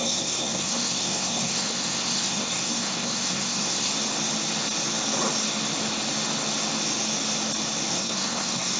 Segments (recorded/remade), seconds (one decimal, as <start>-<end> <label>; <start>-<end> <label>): 0.0-3.9 remade; 3.9-7.9 recorded; 7.9-8.8 remade